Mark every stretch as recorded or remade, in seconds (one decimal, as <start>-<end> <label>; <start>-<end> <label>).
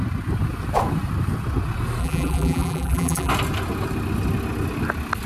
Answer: 0.0-2.0 recorded; 2.0-3.3 remade; 3.3-5.3 recorded